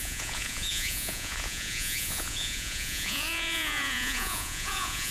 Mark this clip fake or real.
fake